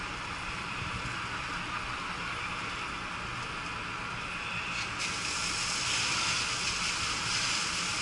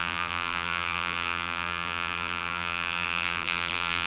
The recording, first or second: first